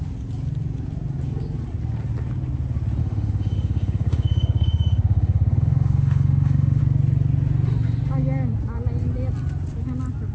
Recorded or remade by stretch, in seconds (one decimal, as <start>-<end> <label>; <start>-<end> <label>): 0.0-3.0 recorded; 3.0-6.8 remade; 6.8-10.3 recorded